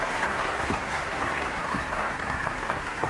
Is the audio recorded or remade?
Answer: remade